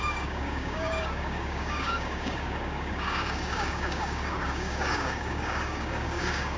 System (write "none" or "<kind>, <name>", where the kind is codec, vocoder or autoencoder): codec, DAC